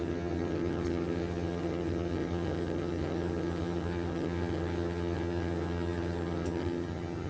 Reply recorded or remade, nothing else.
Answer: remade